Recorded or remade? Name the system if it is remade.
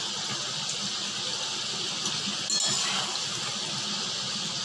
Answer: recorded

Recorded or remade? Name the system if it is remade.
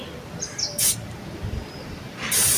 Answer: remade, vocoder, BigVGAN v2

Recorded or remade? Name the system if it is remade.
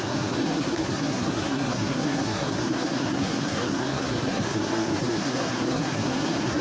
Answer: remade, codec, SNAC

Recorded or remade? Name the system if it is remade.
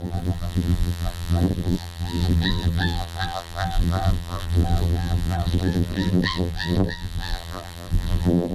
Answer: remade, vocoder, BigVGAN v2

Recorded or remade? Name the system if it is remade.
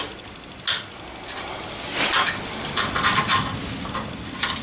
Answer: recorded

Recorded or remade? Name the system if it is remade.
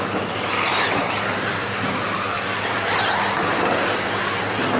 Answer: recorded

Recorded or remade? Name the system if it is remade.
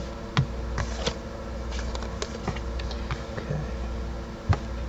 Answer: recorded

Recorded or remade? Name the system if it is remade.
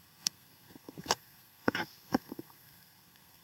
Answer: remade, codec, SNAC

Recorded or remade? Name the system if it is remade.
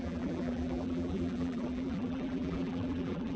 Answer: remade, vocoder, BigVGAN v2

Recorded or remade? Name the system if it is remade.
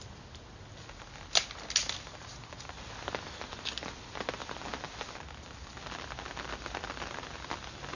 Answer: recorded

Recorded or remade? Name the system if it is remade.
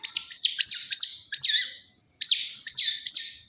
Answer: recorded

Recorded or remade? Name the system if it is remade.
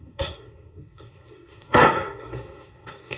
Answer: remade, codec, SNAC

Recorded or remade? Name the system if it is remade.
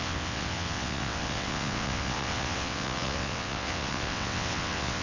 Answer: remade, vocoder, WaveNeXt